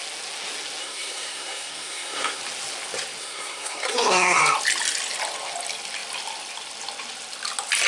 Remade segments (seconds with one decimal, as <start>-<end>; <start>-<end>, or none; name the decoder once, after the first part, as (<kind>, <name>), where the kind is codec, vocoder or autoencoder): 0.8-2.4 (codec, SNAC); 3.2-4.4

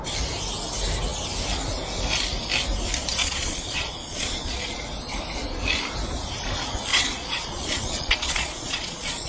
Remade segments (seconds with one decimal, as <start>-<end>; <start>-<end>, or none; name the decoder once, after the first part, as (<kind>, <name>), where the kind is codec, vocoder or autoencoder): 3.1-4.8 (vocoder, Vocos); 6.9-9.3

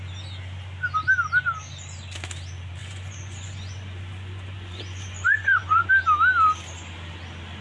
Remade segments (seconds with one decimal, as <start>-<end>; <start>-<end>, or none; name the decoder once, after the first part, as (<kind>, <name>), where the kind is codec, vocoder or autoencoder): 2.8-5.9 (vocoder, Vocos)